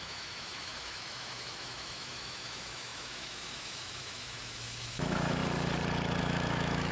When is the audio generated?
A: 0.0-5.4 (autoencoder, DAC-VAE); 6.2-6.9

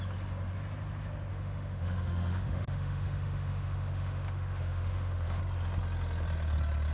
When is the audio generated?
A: 1.3-5.4 (autoencoder, DAC-VAE)

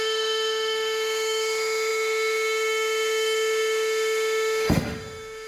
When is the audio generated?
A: 0.0-5.5 (autoencoder, DAC-VAE)

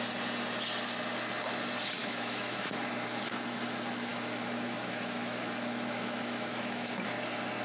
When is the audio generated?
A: 2.0-2.9 (autoencoder, DAC-VAE); 4.1-6.9

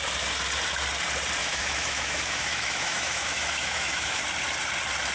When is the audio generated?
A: 1.4-4.2 (autoencoder, DAC-VAE)